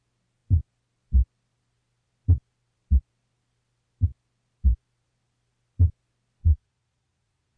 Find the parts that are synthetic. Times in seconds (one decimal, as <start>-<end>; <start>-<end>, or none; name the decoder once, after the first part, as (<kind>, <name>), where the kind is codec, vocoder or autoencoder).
6.4-7.6 (vocoder, Vocos)